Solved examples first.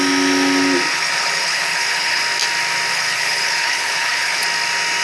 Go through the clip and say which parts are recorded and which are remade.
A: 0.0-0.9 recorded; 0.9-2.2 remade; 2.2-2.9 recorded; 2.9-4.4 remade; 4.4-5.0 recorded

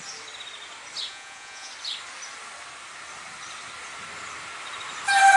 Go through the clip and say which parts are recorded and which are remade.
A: 0.0-1.1 recorded; 1.1-1.7 remade; 1.7-5.4 recorded

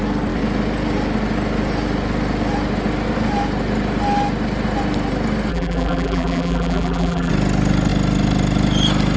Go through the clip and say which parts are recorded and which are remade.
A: 0.0-5.5 recorded; 5.5-7.3 remade; 7.3-9.2 recorded

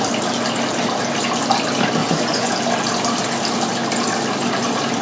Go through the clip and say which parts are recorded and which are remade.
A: 0.0-2.0 recorded; 2.0-2.5 remade; 2.5-5.0 recorded

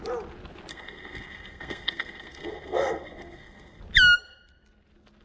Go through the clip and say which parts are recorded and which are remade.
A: 0.0-0.7 recorded; 0.7-3.8 remade; 3.8-5.2 recorded

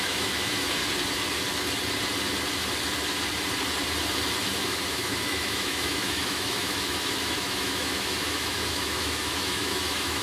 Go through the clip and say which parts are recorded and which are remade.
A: 0.0-0.8 remade; 0.8-4.5 recorded; 4.5-10.2 remade

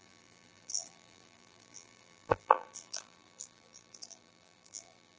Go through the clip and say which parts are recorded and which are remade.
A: 0.0-5.2 remade

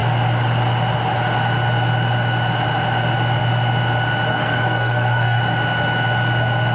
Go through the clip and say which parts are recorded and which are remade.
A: 0.0-4.3 recorded; 4.3-5.4 remade; 5.4-6.7 recorded